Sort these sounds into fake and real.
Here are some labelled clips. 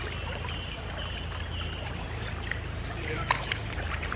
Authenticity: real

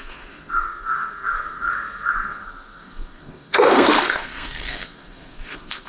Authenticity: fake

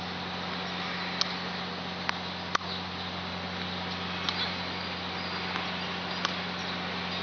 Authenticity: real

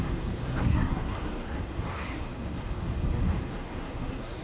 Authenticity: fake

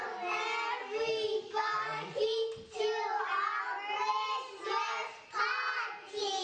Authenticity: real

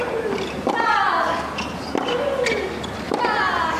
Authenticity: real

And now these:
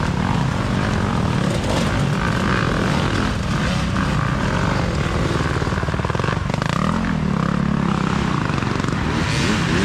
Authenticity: real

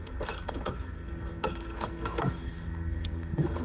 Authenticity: fake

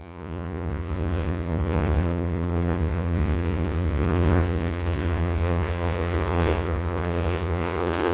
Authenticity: fake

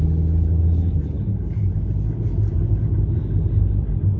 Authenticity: real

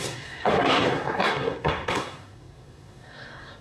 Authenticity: fake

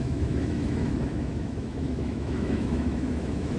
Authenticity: fake